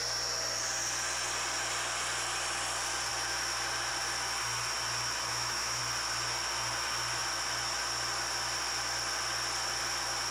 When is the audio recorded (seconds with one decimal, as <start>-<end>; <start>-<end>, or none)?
0.0-5.3; 5.8-10.3